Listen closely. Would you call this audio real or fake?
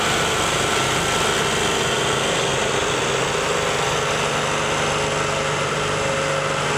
real